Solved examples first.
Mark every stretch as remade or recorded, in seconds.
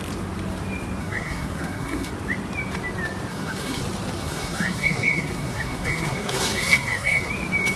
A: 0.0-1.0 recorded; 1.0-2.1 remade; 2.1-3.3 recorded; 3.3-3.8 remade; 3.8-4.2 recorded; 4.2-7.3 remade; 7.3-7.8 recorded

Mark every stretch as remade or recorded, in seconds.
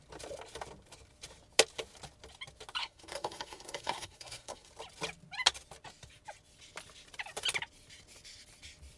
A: 0.0-2.8 recorded; 2.8-4.7 remade; 4.7-9.0 recorded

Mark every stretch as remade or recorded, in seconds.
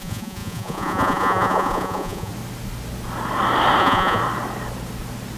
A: 0.0-2.3 remade; 2.3-3.8 recorded; 3.8-4.2 remade; 4.2-5.4 recorded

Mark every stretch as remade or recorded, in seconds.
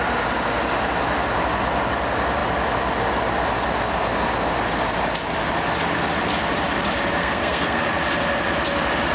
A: 0.0-7.2 recorded; 7.2-7.8 remade; 7.8-9.1 recorded